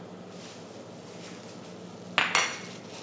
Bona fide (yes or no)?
yes